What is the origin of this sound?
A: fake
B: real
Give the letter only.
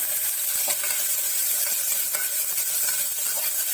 A